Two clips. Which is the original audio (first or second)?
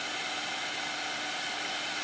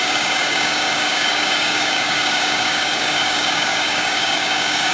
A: first